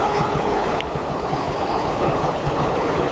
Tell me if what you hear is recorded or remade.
remade